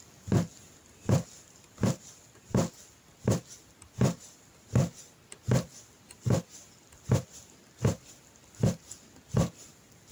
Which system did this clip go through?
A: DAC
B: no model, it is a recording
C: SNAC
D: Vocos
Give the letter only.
B